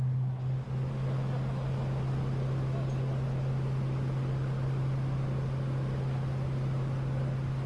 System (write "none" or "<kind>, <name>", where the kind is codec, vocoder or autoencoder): none